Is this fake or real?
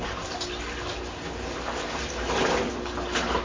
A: real